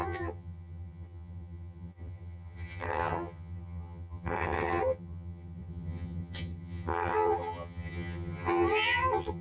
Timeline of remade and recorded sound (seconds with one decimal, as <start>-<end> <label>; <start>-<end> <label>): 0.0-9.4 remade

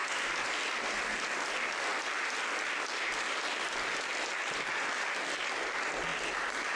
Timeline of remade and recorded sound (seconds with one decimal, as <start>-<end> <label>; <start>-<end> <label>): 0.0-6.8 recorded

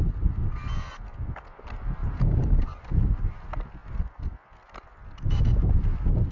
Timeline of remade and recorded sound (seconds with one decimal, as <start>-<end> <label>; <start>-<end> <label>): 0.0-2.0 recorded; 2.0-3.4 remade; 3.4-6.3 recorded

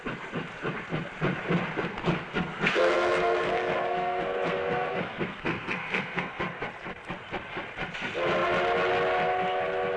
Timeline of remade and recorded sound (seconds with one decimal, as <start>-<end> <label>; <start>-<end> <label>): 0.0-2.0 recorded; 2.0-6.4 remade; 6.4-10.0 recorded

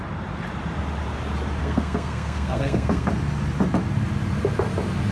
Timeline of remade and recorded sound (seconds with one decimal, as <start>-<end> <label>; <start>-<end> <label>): 0.0-1.6 recorded; 1.6-3.1 remade; 3.1-5.1 recorded

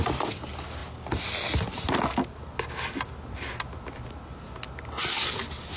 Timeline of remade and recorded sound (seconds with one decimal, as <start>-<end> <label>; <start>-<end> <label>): 0.0-5.8 recorded

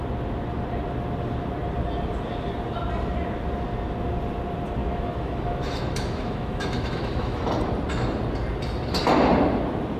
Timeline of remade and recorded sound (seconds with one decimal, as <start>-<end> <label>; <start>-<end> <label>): 0.0-4.8 recorded; 4.8-7.5 remade; 7.5-10.0 recorded